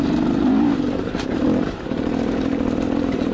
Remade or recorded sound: remade